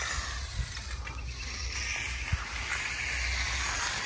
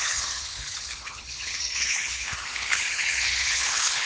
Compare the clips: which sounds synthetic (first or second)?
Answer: second